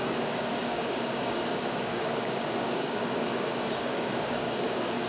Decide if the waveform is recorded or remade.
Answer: remade